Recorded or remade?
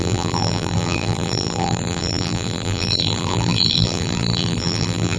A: remade